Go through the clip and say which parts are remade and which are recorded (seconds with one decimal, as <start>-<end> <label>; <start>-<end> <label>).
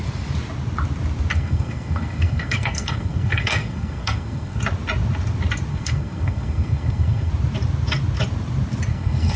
0.0-1.3 recorded; 1.3-4.6 remade; 4.6-5.7 recorded; 5.7-7.3 remade; 7.3-8.9 recorded; 8.9-9.4 remade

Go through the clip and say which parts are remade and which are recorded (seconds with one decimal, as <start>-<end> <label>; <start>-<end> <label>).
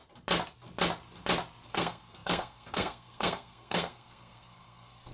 0.0-1.7 recorded; 1.7-5.1 remade